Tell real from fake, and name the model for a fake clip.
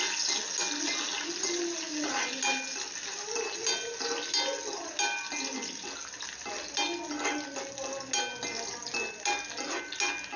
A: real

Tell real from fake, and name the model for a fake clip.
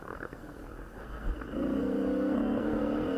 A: fake, codec, SNAC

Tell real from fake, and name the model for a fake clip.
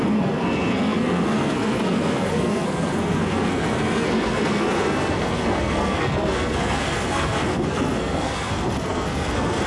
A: fake, codec, SNAC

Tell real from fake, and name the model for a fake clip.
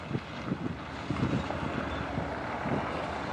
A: real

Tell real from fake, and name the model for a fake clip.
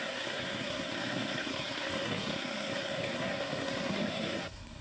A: fake, codec, SNAC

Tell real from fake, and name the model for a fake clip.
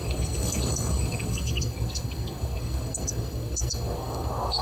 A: fake, codec, SNAC